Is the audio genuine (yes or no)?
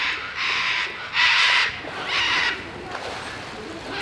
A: yes